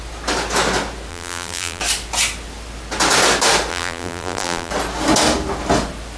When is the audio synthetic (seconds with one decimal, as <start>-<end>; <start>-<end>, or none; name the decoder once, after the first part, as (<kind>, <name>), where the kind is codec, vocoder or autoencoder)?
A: 1.1-1.8 (vocoder, BigVGAN v2); 3.7-4.7